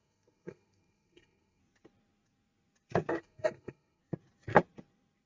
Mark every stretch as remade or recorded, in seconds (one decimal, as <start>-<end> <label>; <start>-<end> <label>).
0.0-1.6 remade; 1.6-3.2 recorded; 3.2-4.0 remade; 4.0-5.3 recorded